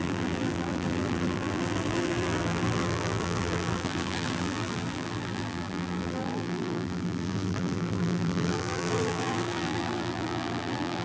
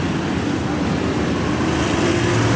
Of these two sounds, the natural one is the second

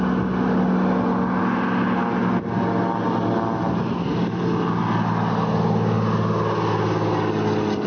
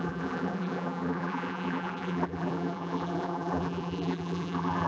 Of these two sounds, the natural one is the first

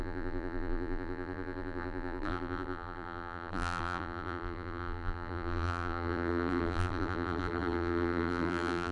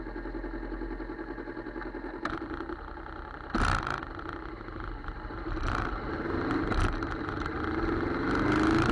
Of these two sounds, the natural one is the second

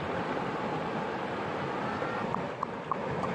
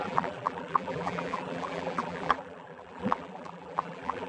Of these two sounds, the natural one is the first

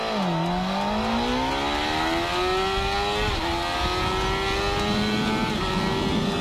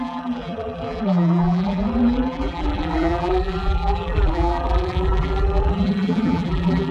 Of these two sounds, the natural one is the first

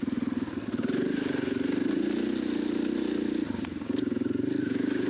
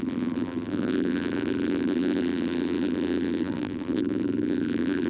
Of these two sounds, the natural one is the first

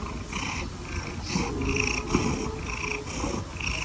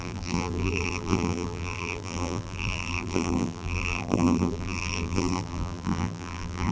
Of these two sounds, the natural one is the first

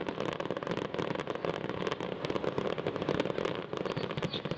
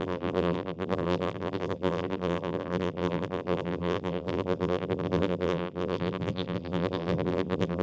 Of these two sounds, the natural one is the first